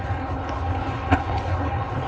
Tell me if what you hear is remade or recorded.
remade